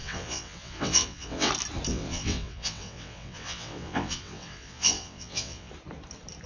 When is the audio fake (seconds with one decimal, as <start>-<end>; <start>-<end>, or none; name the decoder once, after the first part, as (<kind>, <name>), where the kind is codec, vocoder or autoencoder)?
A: 0.0-1.5 (vocoder, WaveNeXt); 1.9-5.7